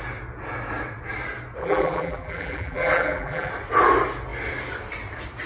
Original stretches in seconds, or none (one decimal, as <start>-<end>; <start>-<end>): 0.0-1.6; 3.5-5.5